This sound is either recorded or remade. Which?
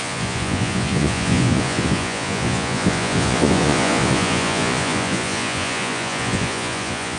remade